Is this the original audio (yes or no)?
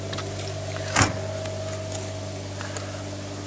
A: yes